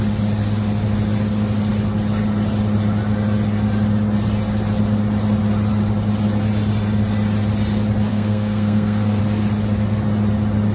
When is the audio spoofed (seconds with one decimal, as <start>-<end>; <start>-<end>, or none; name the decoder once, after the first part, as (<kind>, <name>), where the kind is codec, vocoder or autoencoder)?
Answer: 8.1-9.2 (codec, SNAC)